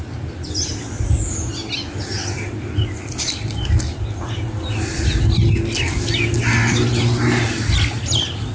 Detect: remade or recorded recorded